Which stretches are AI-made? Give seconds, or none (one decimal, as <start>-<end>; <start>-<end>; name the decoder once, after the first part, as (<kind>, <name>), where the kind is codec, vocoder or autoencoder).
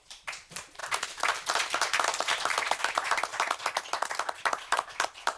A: 0.0-3.3 (vocoder, BigVGAN v2); 4.5-5.4